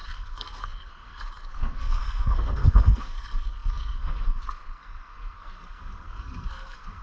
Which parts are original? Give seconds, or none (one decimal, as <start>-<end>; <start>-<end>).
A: none